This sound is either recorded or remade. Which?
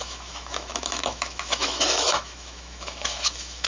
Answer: remade